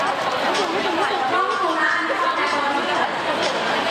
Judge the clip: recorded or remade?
recorded